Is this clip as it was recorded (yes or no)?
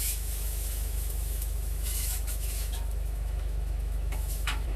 no